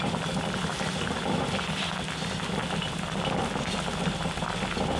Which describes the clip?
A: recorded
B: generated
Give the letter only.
A